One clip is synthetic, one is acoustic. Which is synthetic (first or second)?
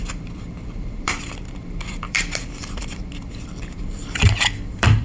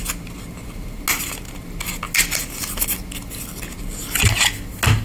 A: first